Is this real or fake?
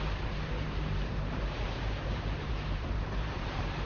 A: fake